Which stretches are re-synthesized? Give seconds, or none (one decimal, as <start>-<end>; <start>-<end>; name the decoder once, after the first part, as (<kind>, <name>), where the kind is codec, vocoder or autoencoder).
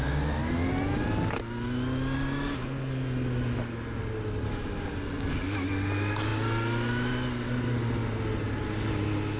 none